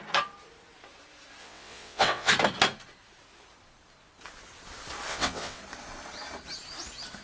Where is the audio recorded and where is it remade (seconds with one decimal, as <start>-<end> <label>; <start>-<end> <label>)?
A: 0.0-1.4 recorded; 1.4-2.3 remade; 2.3-5.1 recorded; 5.1-5.6 remade; 5.6-7.2 recorded